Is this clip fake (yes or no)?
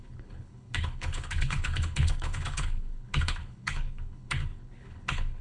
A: yes